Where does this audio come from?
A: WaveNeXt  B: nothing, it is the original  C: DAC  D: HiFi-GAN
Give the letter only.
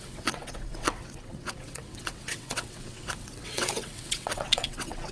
A